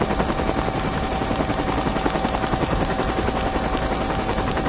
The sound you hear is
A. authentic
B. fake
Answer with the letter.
B